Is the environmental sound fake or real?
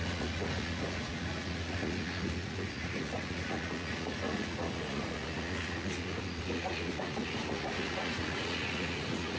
fake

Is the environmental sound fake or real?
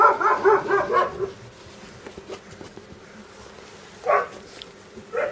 real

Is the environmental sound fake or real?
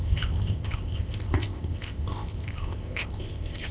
fake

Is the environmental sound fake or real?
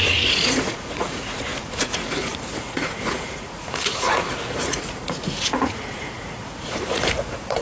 fake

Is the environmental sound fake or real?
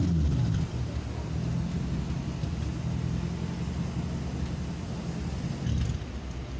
real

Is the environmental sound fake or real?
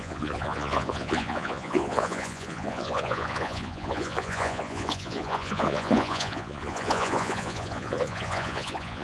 fake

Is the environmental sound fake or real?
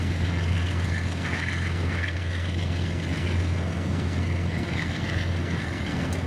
fake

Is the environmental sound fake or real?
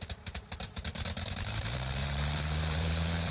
fake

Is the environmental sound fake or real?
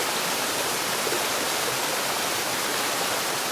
fake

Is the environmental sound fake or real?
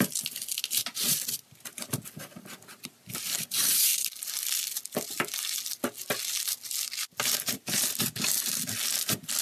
real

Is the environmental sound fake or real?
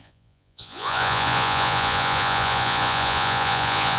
fake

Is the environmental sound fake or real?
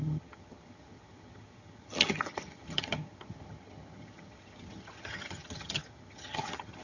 fake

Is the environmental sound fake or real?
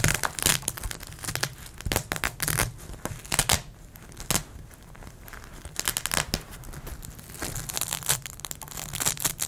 real